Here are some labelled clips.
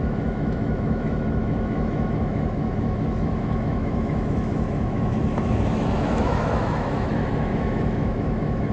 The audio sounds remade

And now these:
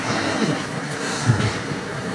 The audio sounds remade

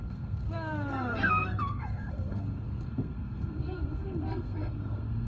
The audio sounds remade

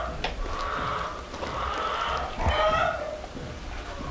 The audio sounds recorded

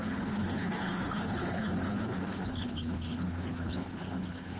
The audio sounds remade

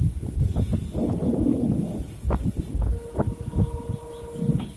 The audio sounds recorded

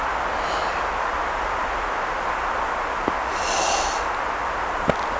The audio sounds recorded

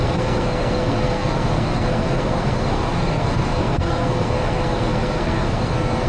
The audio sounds remade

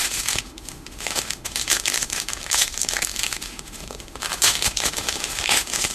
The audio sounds remade